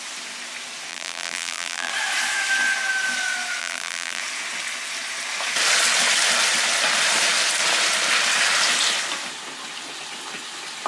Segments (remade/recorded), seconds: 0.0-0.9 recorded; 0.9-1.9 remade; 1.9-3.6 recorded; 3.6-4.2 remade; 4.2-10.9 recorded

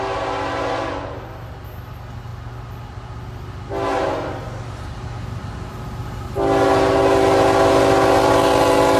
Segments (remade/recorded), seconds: 0.0-9.0 recorded

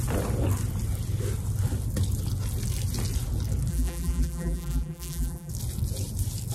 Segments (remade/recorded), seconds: 0.0-3.7 recorded; 3.7-5.5 remade; 5.5-6.5 recorded

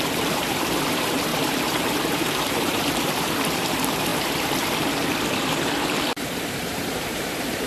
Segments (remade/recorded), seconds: 0.0-4.1 remade; 4.1-6.2 recorded; 6.2-7.7 remade

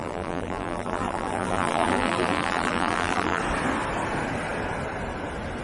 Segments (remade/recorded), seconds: 0.0-3.4 remade; 3.4-5.6 recorded

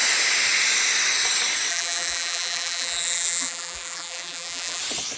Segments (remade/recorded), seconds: 0.0-1.7 recorded; 1.7-4.8 remade; 4.8-5.2 recorded

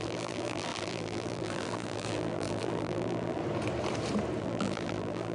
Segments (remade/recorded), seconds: 0.0-3.4 remade; 3.4-4.4 recorded; 4.4-5.3 remade

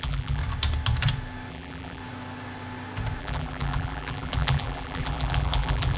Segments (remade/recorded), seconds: 0.0-0.4 remade; 0.4-1.5 recorded; 1.5-2.0 remade; 2.0-3.2 recorded; 3.2-6.0 remade